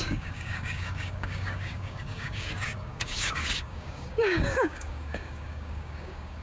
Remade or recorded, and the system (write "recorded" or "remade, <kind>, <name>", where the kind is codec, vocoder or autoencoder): remade, codec, DAC